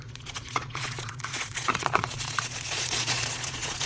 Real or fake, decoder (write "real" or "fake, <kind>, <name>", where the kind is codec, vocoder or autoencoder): fake, vocoder, Vocos